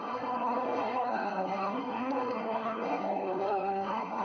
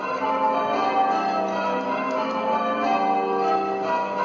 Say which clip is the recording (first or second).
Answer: second